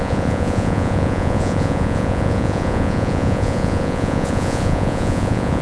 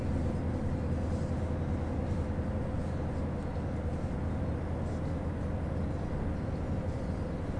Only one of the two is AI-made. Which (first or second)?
first